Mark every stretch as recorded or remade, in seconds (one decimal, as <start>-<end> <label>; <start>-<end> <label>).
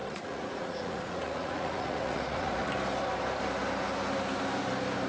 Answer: 0.0-2.7 remade; 2.7-5.1 recorded